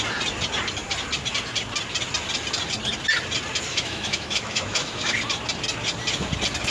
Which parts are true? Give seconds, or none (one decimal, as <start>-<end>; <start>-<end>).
0.0-3.7; 5.2-6.7